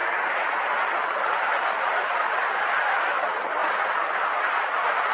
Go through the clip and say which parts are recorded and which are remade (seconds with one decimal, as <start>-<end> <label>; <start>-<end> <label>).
0.0-5.1 recorded